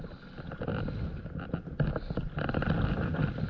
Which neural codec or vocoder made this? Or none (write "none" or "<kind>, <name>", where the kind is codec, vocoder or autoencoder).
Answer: none